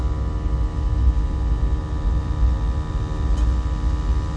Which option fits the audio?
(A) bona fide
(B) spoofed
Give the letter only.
A